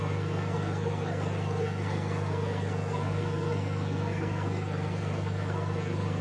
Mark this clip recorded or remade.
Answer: remade